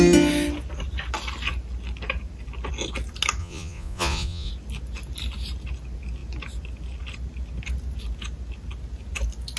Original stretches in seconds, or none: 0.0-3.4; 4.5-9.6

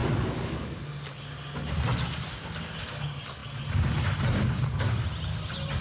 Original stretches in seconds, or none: 0.8-5.8

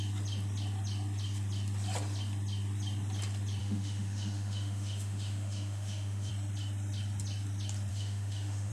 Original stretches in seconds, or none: 0.0-3.6; 6.3-7.9

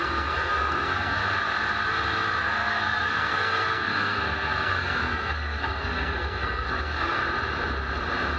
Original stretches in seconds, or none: 1.2-2.4; 7.2-8.4